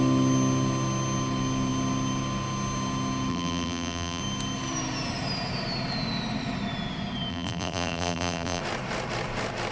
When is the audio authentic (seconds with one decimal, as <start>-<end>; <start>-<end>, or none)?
0.0-3.3; 4.2-7.3; 8.6-9.7